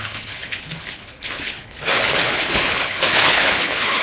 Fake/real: fake